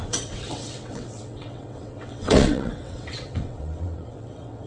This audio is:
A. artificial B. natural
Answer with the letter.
A